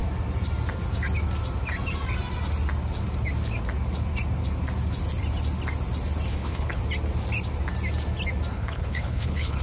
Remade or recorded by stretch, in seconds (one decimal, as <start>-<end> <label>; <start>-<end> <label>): 0.0-6.3 recorded; 6.3-6.8 remade; 6.8-8.5 recorded; 8.5-9.6 remade